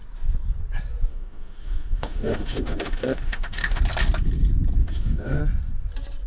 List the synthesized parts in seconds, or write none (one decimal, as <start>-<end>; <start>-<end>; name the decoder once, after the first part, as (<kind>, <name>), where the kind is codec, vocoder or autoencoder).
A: 1.1-3.8 (autoencoder, DAC-VAE); 4.8-5.4